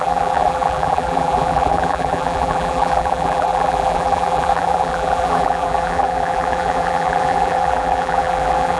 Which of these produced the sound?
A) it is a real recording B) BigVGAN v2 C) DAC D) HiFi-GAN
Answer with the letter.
B